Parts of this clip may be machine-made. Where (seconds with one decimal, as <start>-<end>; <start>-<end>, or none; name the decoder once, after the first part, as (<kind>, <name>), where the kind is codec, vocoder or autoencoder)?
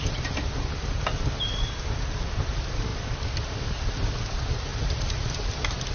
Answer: 4.7-5.9 (vocoder, BigVGAN v2)